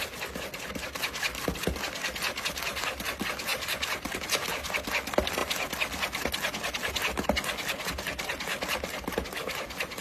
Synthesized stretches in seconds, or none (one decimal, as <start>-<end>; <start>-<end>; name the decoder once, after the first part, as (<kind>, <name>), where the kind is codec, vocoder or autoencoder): 3.5-4.5 (vocoder, BigVGAN v2)